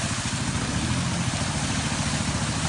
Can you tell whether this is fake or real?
real